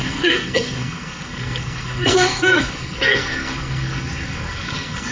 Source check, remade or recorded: remade